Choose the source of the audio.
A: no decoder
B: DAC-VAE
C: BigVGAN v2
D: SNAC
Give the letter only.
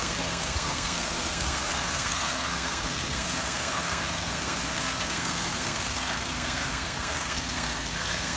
D